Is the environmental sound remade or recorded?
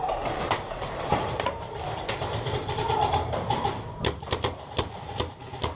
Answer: remade